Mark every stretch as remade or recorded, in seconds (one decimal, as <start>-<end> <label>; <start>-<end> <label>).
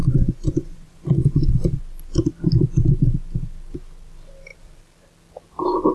0.0-1.8 remade; 1.8-5.9 recorded